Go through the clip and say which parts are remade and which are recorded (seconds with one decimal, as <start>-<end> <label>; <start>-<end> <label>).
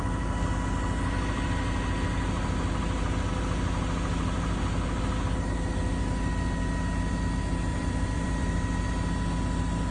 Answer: 0.0-7.7 recorded; 7.7-8.8 remade; 8.8-9.9 recorded